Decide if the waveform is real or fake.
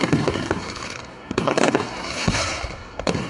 fake